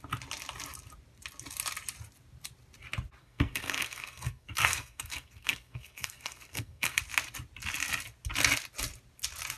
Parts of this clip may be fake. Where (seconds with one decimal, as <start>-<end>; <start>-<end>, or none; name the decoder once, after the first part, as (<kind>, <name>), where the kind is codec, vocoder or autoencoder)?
3.2-7.0 (codec, SNAC)